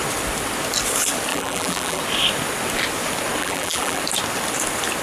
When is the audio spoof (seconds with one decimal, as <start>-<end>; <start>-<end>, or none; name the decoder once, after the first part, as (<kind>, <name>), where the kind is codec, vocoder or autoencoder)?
1.3-2.0 (vocoder, BigVGAN v2); 3.4-4.0